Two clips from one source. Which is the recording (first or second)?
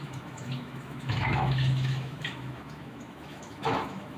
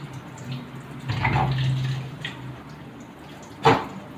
second